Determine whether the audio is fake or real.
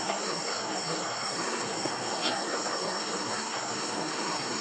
fake